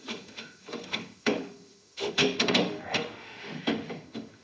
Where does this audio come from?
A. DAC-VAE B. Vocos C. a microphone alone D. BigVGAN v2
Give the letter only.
A